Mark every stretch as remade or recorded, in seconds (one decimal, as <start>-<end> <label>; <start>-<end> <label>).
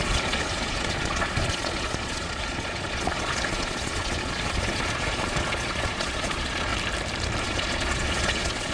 0.0-6.7 remade; 6.7-7.4 recorded; 7.4-8.7 remade